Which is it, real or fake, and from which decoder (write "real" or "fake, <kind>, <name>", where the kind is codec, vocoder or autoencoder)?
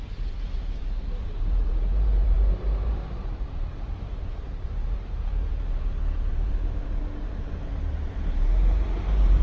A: fake, vocoder, BigVGAN v2